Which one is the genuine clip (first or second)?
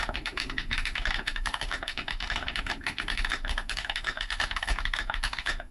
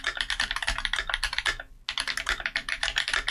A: second